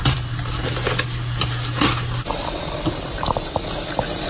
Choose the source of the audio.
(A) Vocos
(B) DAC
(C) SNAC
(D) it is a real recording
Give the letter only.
D